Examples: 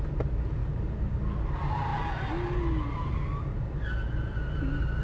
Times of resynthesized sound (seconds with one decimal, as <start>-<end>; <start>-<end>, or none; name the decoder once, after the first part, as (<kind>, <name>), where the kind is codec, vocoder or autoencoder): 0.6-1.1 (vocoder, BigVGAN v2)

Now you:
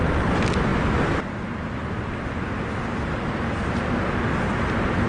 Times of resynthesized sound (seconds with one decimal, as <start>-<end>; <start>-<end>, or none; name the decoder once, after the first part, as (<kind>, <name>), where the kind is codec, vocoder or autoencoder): none

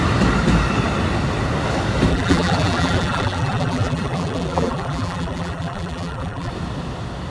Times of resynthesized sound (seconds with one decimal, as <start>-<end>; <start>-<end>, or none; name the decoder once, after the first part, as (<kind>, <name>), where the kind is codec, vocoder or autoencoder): 2.1-6.5 (vocoder, BigVGAN v2)